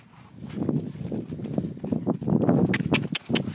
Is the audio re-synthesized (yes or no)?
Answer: no